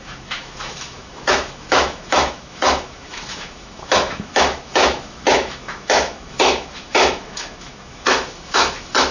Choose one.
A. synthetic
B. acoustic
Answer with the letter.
A